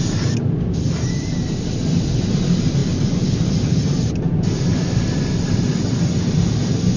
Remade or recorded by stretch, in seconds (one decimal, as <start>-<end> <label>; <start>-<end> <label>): 0.0-7.0 recorded